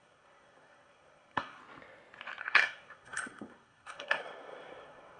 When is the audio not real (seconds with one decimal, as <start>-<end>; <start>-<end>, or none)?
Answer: 0.0-1.6; 2.4-5.2